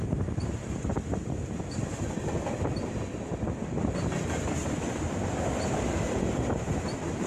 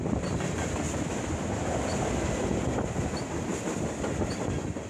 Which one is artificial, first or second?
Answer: second